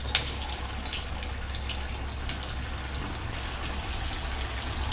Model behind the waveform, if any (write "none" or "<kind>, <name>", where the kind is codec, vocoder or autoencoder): none